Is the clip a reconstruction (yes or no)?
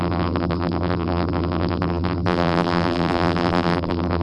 yes